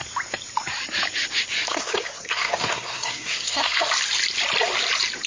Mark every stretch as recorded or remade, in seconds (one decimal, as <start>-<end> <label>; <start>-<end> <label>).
0.0-1.7 recorded; 1.7-3.9 remade; 3.9-5.3 recorded